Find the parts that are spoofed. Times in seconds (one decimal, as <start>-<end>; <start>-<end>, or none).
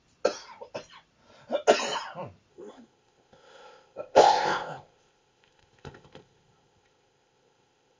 2.5-8.0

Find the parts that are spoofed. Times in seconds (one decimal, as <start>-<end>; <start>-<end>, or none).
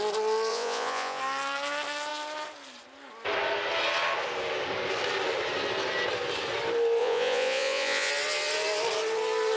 0.5-1.2; 7.0-8.1